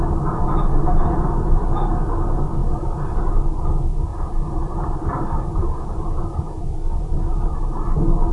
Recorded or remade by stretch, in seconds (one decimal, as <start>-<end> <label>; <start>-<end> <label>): 0.0-0.8 recorded; 0.8-1.9 remade; 1.9-2.6 recorded; 2.6-3.2 remade; 3.2-4.1 recorded; 4.1-7.8 remade; 7.8-8.3 recorded